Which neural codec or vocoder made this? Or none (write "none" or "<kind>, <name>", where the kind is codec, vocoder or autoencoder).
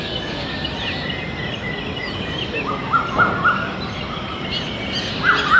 none